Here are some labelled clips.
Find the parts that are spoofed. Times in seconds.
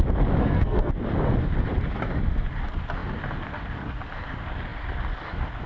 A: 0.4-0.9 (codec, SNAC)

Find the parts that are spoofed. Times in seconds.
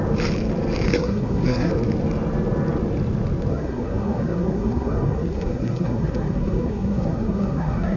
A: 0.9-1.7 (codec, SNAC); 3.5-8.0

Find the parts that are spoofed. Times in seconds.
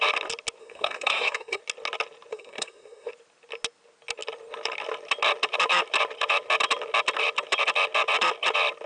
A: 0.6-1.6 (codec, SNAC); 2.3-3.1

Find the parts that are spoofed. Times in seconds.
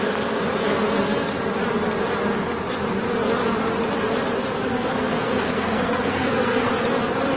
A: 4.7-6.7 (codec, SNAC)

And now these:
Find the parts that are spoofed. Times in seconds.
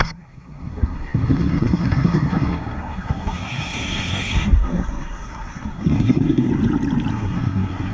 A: 0.0-6.5 (codec, SNAC); 7.1-7.9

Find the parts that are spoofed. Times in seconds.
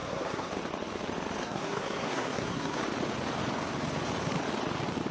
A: 0.0-0.5 (codec, SNAC); 1.4-2.8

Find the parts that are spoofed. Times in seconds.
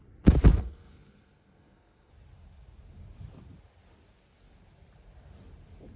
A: 0.5-2.1 (codec, SNAC)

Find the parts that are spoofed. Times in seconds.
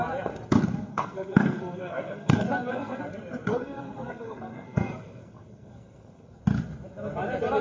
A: 0.9-3.0 (codec, SNAC); 3.5-6.4